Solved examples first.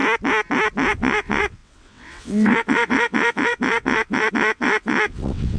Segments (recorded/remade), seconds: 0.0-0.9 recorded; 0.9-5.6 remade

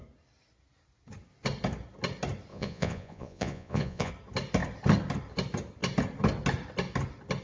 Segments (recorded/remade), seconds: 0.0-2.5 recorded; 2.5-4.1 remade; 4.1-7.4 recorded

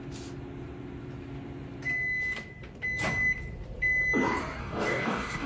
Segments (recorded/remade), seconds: 0.0-4.6 recorded; 4.6-5.5 remade